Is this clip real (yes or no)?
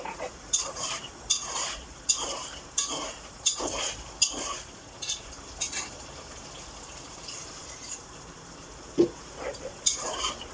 yes